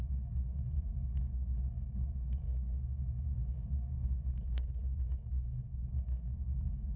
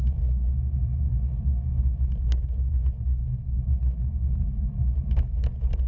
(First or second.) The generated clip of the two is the first